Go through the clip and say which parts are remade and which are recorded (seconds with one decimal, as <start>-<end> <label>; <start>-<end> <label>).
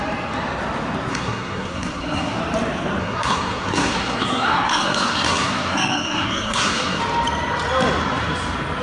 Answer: 0.0-1.1 recorded; 1.1-2.4 remade; 2.4-3.0 recorded; 3.0-7.0 remade; 7.0-8.8 recorded